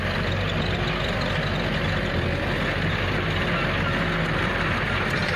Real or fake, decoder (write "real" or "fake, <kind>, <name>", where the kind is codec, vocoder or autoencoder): real